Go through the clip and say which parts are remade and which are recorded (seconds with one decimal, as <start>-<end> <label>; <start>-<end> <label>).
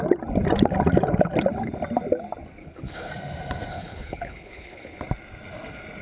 0.0-2.6 recorded; 2.6-3.1 remade; 3.1-3.7 recorded; 3.7-5.0 remade; 5.0-6.0 recorded